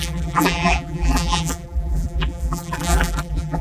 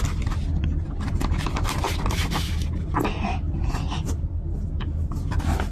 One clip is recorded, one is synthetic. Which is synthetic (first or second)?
first